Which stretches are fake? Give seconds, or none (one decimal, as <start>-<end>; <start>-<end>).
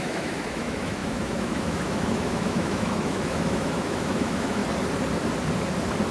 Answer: 0.0-4.6